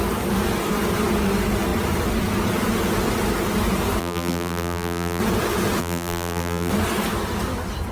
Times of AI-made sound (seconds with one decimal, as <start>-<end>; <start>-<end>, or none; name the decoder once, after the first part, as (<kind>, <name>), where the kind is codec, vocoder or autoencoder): 4.0-5.2 (vocoder, BigVGAN v2); 5.8-6.7